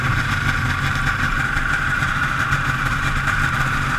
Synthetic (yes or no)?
yes